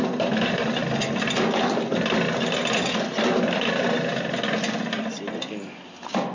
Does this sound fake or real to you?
real